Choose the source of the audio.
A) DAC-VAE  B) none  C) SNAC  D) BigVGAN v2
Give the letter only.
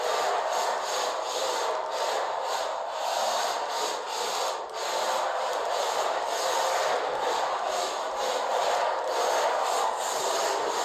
B